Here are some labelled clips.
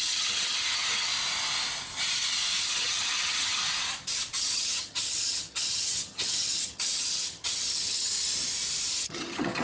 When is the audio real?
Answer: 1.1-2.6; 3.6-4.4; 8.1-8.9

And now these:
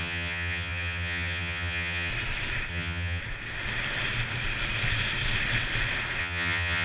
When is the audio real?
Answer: 2.1-2.7; 3.2-6.2

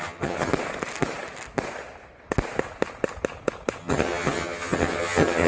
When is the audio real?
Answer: 0.5-3.8

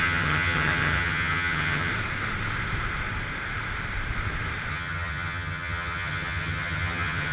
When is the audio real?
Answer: 1.9-4.7

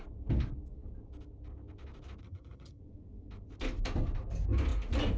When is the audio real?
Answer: 0.0-2.2; 2.8-5.2

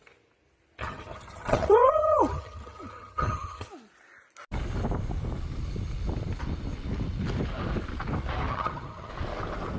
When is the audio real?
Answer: 0.0-0.8; 3.7-8.5; 9.1-9.8